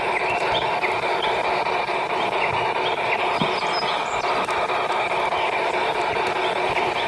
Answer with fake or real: real